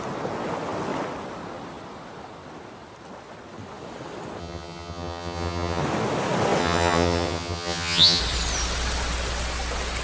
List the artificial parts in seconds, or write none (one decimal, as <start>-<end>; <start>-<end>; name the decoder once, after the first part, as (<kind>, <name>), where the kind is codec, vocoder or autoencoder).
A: 4.4-5.8 (vocoder, HiFi-GAN); 6.6-8.2